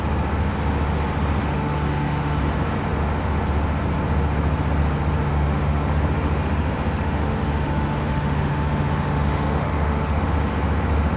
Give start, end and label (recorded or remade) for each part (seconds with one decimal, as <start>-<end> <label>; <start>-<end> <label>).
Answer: 0.0-1.4 recorded; 1.4-2.4 remade; 2.4-5.3 recorded; 5.3-10.2 remade; 10.2-11.2 recorded